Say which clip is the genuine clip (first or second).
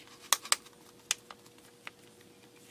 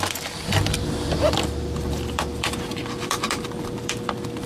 first